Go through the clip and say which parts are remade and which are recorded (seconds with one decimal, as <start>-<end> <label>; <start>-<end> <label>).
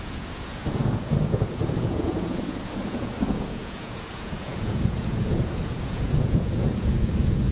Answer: 0.0-7.5 remade